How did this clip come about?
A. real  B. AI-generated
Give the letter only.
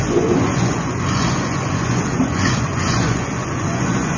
B